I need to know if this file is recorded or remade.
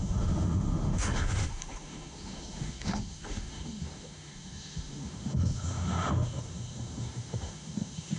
remade